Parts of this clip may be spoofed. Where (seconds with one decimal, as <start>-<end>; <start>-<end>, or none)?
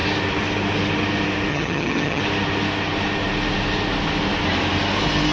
1.5-2.2